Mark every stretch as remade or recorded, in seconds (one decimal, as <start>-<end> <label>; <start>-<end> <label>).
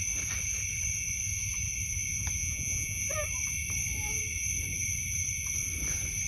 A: 0.0-2.4 recorded; 2.4-3.0 remade; 3.0-6.3 recorded